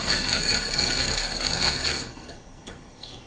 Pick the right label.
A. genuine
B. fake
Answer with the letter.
B